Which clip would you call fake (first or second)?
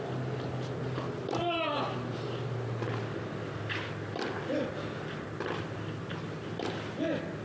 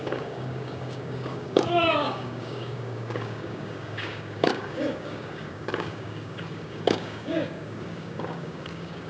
second